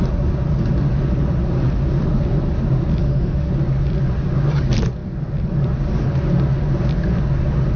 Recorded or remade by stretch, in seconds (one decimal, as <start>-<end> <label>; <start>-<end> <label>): 0.0-3.0 recorded; 3.0-3.5 remade; 3.5-7.8 recorded